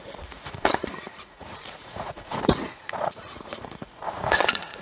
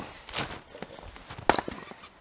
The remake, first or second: first